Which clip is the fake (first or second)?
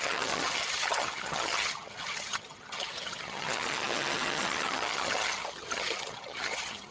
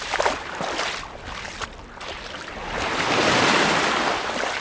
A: first